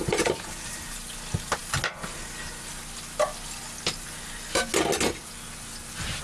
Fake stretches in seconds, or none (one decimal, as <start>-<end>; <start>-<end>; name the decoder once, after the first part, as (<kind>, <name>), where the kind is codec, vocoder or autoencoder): none